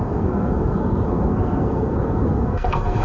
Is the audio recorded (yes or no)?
no